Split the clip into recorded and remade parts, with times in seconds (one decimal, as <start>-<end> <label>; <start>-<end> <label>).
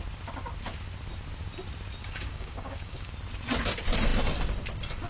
0.0-2.0 recorded; 2.0-3.1 remade; 3.1-5.1 recorded